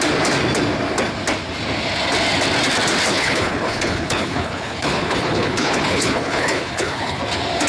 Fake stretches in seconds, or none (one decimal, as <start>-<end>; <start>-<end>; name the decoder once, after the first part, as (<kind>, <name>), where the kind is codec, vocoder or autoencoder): 3.1-7.2 (codec, HILCodec)